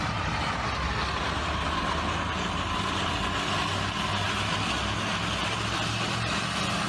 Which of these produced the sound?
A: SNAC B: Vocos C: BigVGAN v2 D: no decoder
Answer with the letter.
D